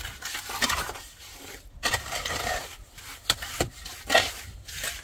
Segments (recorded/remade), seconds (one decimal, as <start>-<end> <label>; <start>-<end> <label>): 0.0-0.8 recorded; 0.8-3.8 remade; 3.8-5.0 recorded